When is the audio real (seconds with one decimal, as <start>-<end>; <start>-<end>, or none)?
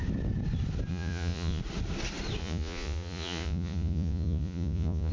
0.0-0.9; 1.6-2.4